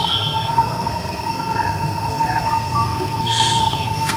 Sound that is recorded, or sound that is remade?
remade